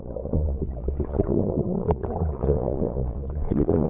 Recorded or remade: remade